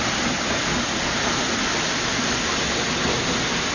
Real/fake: real